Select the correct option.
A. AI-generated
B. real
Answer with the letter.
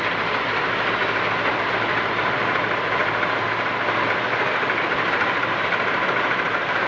A